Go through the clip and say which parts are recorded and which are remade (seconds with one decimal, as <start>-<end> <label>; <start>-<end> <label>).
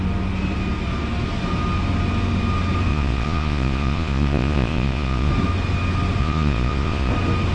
0.0-2.9 recorded; 2.9-5.3 remade; 5.3-6.2 recorded; 6.2-7.1 remade; 7.1-7.5 recorded